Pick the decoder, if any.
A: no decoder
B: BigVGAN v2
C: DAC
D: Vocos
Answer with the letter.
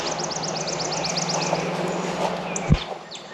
A